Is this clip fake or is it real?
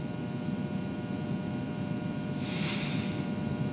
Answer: fake